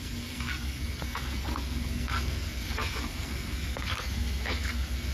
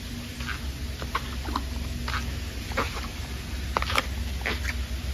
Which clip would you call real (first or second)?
second